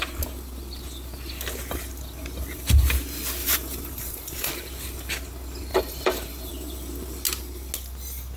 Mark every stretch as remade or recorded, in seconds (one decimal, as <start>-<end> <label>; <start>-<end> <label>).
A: 0.0-3.4 recorded; 3.4-4.5 remade; 4.5-5.7 recorded; 5.7-6.5 remade; 6.5-8.4 recorded